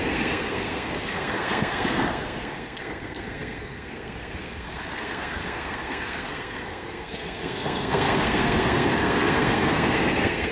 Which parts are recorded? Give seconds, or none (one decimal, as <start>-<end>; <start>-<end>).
none